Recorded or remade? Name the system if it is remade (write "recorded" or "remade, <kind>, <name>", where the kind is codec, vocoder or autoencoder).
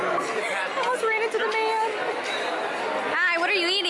recorded